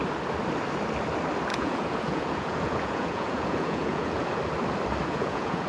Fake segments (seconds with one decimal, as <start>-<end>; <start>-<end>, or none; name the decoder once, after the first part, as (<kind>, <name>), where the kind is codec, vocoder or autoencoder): 1.5-4.4 (vocoder, Vocos); 5.0-5.7